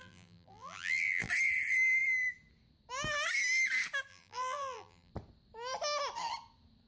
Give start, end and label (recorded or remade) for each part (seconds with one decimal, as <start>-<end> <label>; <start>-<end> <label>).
0.0-1.3 remade; 1.3-4.1 recorded; 4.1-5.1 remade; 5.1-6.9 recorded